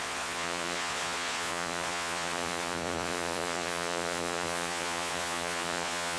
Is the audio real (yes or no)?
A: no